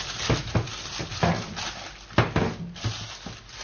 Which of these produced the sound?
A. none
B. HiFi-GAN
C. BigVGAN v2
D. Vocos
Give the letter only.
A